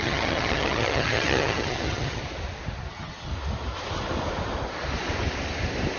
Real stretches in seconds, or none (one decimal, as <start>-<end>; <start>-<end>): 2.2-2.9; 3.3-6.0